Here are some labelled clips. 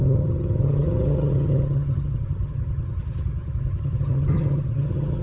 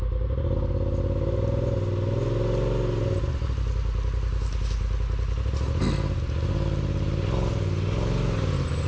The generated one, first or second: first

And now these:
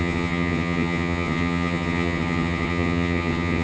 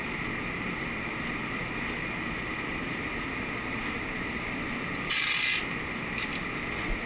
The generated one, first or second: first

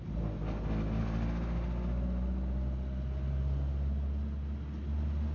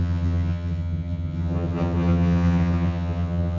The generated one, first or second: second